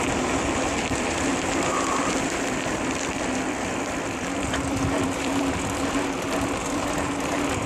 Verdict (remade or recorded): remade